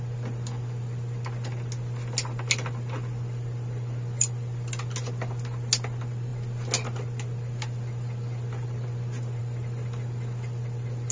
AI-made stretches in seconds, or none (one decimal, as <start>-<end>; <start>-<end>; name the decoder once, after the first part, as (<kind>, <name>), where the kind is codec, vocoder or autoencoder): none